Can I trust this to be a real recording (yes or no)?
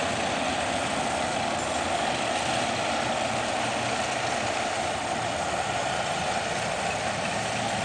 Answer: yes